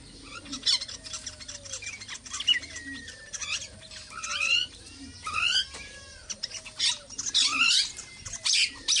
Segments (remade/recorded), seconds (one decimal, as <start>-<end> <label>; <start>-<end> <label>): 0.0-9.0 recorded